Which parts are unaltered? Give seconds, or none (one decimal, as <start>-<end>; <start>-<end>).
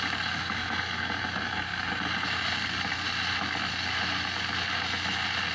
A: 0.0-5.5